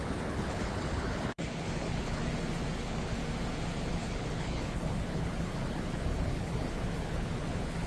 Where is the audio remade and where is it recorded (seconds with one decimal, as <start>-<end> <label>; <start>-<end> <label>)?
0.0-2.2 remade; 2.2-2.8 recorded; 2.8-3.2 remade; 3.2-3.9 recorded; 3.9-7.9 remade